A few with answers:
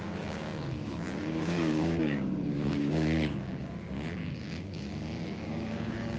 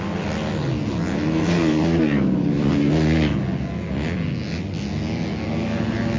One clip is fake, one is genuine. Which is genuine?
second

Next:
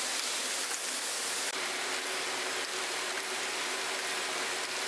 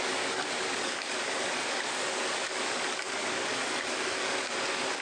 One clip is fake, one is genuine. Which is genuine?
first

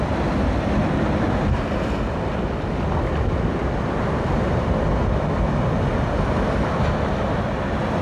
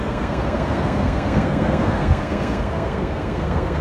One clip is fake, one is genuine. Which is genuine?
first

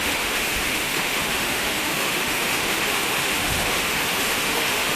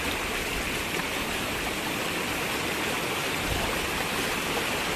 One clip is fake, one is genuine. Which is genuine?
second